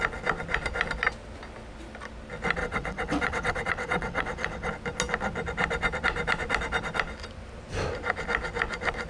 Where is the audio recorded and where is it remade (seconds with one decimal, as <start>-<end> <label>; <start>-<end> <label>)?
0.0-2.6 recorded; 2.6-4.7 remade; 4.7-9.1 recorded